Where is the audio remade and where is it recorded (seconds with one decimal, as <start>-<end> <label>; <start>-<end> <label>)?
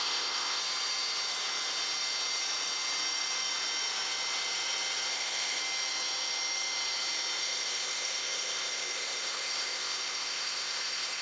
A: 0.0-0.6 remade; 0.6-5.1 recorded; 5.1-5.6 remade; 5.6-7.4 recorded; 7.4-11.2 remade